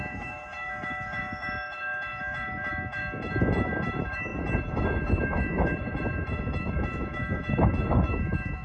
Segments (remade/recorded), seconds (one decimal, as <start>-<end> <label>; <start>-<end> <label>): 0.0-8.6 remade